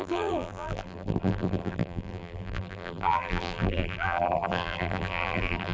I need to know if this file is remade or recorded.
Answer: remade